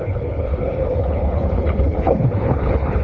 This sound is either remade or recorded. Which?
remade